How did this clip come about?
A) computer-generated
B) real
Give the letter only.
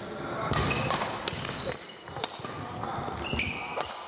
B